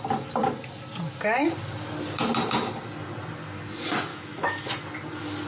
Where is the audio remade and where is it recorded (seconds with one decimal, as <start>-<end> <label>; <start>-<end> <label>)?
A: 0.0-4.1 recorded; 4.1-4.6 remade; 4.6-5.5 recorded